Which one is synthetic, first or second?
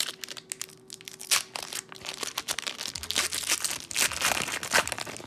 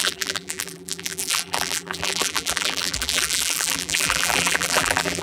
second